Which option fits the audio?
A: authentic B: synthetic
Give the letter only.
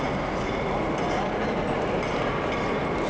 A